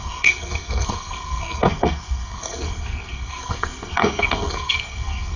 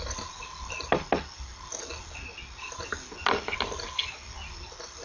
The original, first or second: second